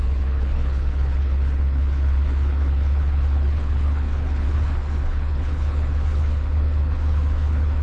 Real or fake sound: fake